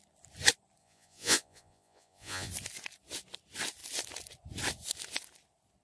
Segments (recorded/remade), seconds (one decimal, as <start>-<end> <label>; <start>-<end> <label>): 0.0-0.8 recorded; 0.8-2.5 remade; 2.5-5.8 recorded